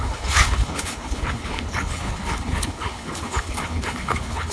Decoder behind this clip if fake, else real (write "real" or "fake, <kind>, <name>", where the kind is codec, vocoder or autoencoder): fake, codec, HILCodec